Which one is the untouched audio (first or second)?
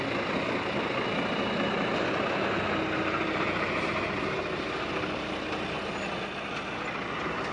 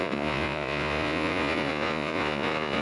first